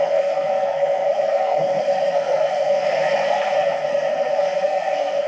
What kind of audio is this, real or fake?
fake